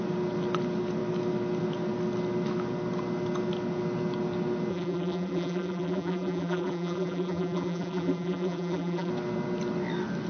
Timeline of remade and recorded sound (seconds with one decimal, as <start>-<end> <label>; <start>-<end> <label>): 0.0-4.7 recorded; 4.7-9.1 remade; 9.1-10.3 recorded